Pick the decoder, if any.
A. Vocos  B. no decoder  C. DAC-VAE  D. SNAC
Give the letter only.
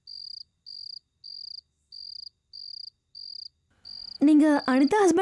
B